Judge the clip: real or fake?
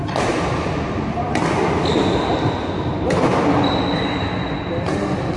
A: real